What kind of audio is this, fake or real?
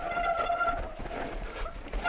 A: real